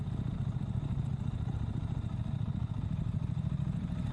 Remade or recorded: recorded